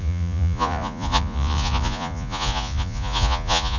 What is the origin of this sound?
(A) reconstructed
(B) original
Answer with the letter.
A